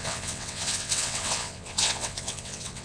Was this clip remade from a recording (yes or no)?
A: yes